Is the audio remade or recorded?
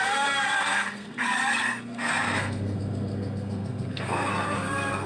remade